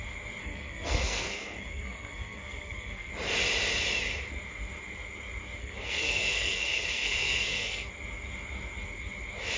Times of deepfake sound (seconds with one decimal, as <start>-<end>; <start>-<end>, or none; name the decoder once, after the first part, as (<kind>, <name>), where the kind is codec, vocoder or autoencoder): 0.4-3.1 (codec, SNAC); 5.6-7.9